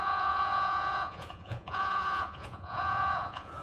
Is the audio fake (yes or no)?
yes